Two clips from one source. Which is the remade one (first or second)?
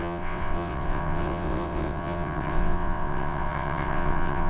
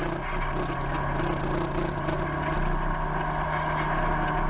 first